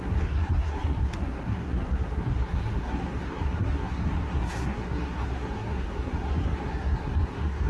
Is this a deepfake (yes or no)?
yes